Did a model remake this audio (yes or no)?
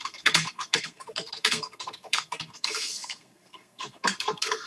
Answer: yes